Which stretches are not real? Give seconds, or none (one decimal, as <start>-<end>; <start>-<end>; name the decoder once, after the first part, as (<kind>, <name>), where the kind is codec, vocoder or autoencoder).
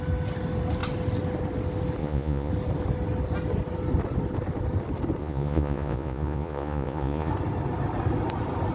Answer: 2.0-2.5 (vocoder, Vocos); 5.2-7.3